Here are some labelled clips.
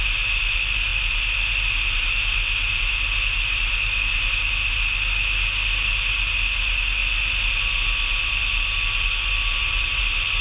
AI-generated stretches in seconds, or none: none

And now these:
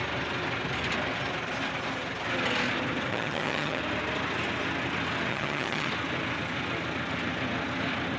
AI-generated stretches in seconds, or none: 3.1-3.8 (vocoder, HiFi-GAN); 5.3-5.9